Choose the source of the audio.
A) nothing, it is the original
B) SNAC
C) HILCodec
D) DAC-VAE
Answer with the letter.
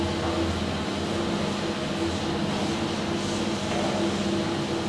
A